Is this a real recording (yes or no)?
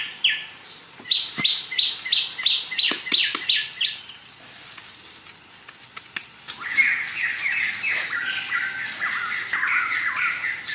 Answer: yes